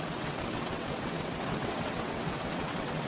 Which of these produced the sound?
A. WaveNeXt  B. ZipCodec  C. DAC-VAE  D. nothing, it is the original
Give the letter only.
A